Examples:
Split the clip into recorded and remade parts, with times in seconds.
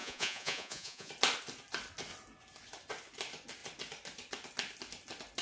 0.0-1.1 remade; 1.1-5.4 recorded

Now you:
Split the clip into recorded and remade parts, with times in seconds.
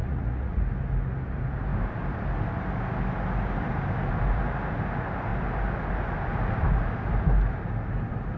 0.0-0.6 remade; 0.6-8.4 recorded